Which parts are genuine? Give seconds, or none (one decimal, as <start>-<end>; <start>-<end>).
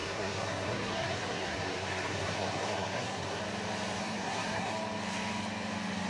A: 3.4-4.0; 4.7-6.1